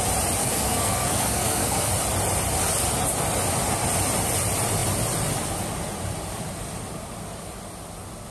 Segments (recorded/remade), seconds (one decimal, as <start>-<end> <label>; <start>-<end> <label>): 0.0-0.4 recorded; 0.4-1.9 remade; 1.9-8.3 recorded